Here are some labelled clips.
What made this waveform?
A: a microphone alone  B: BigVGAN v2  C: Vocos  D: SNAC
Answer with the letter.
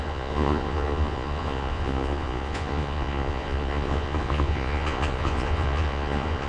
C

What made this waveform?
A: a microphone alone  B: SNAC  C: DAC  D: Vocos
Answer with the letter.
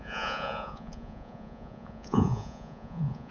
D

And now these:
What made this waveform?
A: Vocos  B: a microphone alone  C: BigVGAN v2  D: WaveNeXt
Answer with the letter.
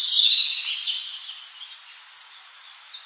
B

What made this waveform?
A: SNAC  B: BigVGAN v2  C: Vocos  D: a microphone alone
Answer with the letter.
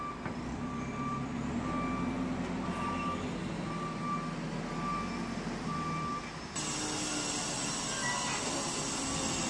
D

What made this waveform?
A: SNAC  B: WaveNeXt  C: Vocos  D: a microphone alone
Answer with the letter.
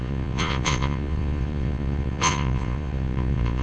C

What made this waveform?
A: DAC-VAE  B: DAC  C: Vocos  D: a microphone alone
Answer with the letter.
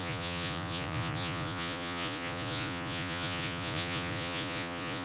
C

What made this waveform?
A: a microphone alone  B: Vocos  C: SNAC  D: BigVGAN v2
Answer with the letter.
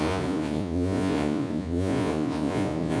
B